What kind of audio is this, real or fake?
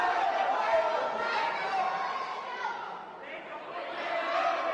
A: fake